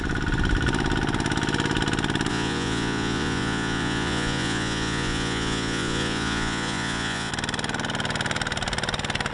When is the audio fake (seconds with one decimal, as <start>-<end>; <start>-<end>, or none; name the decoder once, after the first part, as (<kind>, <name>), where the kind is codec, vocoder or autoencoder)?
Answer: 2.3-7.3 (vocoder, Vocos)